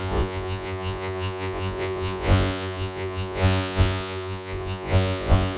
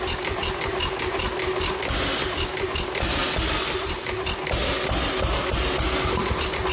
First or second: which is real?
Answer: second